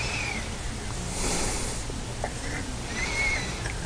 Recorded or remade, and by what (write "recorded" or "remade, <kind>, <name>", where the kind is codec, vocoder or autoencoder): recorded